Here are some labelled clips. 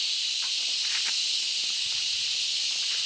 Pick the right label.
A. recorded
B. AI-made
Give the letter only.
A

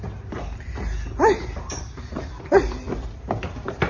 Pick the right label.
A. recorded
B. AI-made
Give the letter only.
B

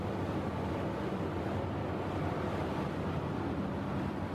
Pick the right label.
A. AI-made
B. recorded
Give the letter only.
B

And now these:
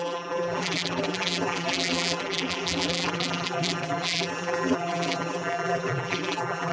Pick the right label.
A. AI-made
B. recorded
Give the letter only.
A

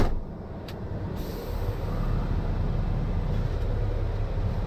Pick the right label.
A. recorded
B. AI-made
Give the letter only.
A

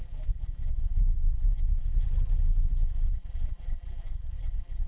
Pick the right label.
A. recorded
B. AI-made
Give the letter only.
B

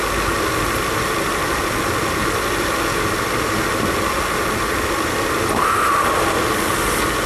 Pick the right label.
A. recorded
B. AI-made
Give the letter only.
A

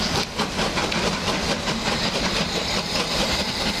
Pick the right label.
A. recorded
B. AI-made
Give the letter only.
B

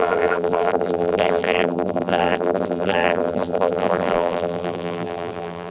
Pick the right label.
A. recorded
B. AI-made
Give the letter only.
B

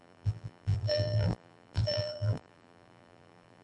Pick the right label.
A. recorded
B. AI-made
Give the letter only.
B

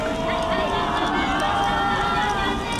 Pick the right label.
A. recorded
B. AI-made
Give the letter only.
A